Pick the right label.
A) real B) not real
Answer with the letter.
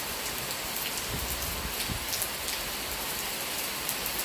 A